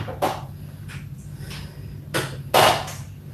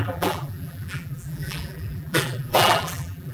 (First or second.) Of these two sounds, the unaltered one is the first